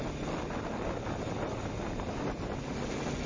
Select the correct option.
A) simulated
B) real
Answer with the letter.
B